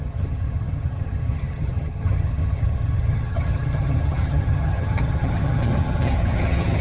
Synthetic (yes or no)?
yes